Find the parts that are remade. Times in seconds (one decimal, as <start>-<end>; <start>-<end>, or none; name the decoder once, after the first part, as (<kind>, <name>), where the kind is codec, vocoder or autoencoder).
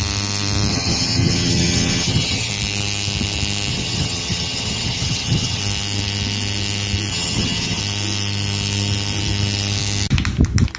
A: 0.7-2.5 (vocoder, HiFi-GAN); 3.7-5.6; 7.1-7.8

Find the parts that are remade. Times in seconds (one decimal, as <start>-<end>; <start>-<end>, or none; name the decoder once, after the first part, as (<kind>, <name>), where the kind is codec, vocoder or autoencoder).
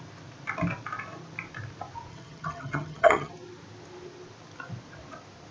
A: 2.1-3.3 (vocoder, HiFi-GAN)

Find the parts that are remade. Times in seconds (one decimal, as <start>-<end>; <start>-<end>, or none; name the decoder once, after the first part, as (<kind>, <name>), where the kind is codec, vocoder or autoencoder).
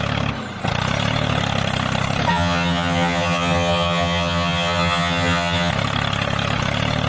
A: 2.3-5.7 (vocoder, HiFi-GAN)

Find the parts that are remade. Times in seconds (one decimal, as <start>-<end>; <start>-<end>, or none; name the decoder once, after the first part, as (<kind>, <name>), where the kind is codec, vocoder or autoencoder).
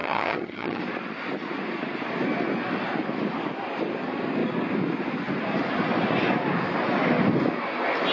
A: 0.0-0.8 (vocoder, HiFi-GAN)